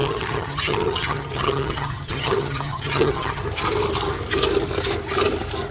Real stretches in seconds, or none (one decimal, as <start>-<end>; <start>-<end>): 3.4-5.7